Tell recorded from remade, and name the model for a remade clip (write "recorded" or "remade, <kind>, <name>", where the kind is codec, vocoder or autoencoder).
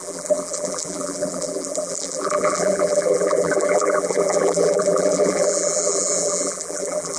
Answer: remade, vocoder, BigVGAN v2